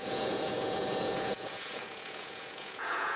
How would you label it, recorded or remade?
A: remade